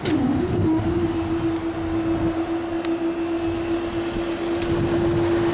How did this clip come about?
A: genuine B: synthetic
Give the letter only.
A